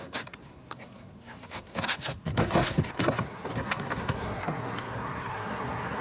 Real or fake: fake